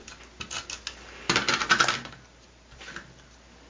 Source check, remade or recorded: recorded